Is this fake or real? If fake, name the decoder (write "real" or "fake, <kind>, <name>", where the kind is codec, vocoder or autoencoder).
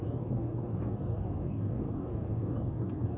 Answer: fake, codec, DAC